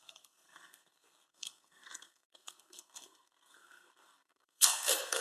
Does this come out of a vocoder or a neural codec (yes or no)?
yes